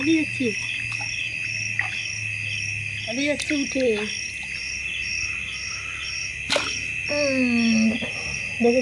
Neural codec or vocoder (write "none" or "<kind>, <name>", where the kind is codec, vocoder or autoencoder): none